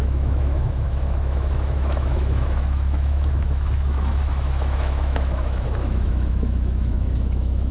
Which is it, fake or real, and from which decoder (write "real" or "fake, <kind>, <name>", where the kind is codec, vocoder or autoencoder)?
fake, autoencoder, DAC-VAE